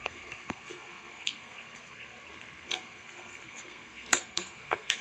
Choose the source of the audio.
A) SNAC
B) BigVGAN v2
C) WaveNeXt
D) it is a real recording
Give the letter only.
A